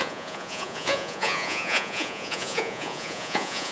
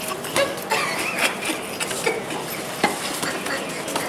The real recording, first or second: second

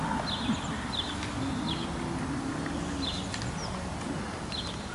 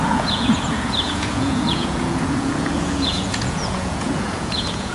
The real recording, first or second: first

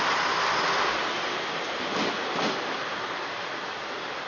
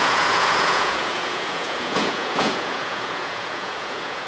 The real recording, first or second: first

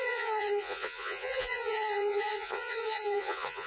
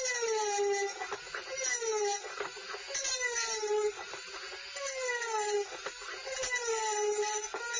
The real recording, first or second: second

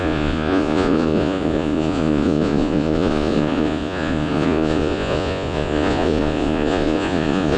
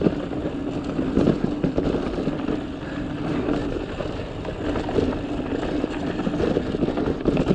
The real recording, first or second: second